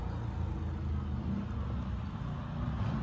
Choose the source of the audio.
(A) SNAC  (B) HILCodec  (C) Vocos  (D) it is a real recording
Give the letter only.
D